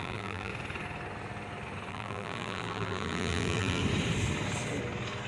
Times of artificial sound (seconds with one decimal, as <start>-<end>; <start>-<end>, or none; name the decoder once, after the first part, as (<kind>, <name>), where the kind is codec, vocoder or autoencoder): 0.0-0.5 (vocoder, BigVGAN v2); 1.9-3.8